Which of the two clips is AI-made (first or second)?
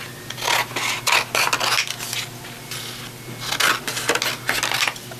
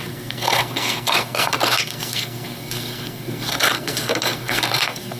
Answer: second